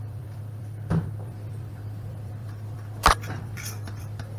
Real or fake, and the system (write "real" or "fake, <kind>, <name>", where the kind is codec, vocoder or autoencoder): fake, vocoder, BigVGAN v2